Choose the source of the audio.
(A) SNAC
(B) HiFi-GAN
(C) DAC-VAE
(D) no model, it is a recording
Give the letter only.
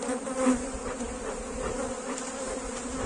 D